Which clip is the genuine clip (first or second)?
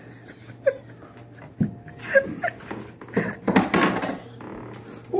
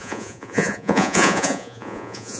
first